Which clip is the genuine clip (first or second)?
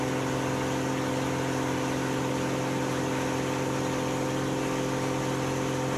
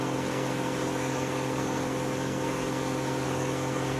first